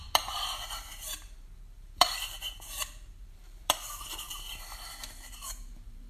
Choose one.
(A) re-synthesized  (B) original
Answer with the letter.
A